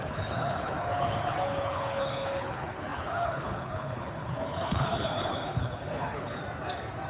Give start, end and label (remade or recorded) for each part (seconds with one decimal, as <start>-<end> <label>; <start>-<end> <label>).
0.0-6.4 remade; 6.4-7.1 recorded